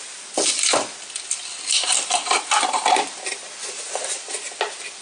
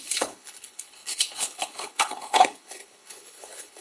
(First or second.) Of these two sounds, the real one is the first